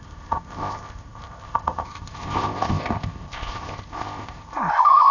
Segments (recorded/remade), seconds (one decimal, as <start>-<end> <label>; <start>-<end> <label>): 0.0-5.1 remade